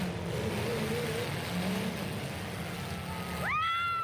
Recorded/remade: recorded